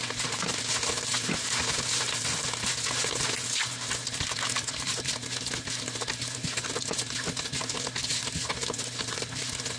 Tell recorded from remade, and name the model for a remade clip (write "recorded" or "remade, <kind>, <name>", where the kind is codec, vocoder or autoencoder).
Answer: recorded